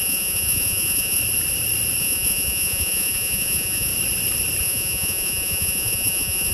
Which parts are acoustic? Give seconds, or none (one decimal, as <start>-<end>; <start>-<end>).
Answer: 1.2-2.0; 3.9-4.6